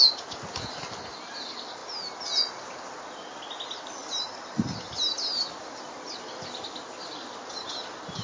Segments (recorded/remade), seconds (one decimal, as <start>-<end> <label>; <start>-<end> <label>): 0.0-8.2 recorded